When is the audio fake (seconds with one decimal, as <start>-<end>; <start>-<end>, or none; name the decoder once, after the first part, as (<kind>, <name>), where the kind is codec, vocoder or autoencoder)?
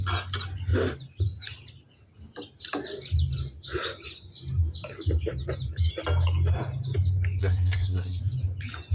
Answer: 7.4-8.2 (codec, SNAC)